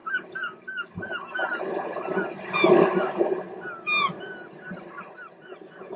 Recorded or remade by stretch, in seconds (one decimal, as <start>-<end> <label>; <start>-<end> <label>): 0.0-0.9 remade; 0.9-6.0 recorded